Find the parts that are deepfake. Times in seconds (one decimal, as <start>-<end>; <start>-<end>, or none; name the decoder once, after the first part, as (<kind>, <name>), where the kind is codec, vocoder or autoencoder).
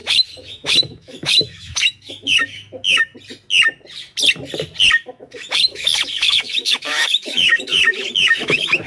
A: 0.0-3.1 (autoencoder, DAC-VAE); 5.0-8.9